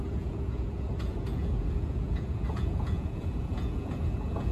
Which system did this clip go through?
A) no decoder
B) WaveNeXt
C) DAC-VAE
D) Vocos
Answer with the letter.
D